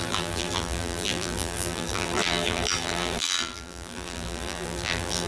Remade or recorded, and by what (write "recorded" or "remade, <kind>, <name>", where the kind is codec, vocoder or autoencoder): remade, vocoder, BigVGAN v2